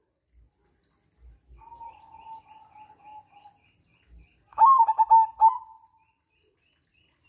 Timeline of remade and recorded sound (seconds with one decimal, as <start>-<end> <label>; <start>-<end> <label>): 0.0-4.5 recorded; 4.5-5.1 remade; 5.1-7.3 recorded